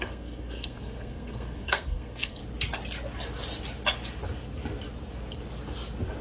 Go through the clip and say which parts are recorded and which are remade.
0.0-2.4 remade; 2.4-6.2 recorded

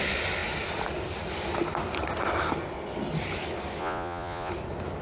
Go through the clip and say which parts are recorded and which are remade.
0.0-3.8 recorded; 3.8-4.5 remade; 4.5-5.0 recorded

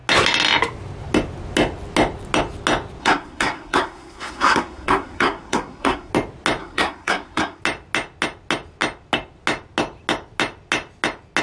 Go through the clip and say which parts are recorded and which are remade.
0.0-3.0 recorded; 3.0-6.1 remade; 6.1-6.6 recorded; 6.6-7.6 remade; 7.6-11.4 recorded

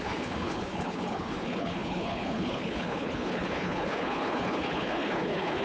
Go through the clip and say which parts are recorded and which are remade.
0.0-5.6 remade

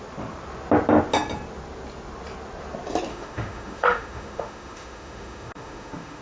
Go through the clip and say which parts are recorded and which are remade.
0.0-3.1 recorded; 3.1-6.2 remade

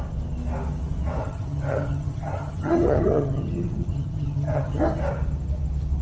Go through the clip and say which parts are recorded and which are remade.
0.0-1.2 recorded; 1.2-4.8 remade; 4.8-6.0 recorded